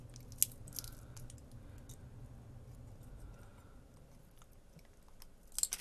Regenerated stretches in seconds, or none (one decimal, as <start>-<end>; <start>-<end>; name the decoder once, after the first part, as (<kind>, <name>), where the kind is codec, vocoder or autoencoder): none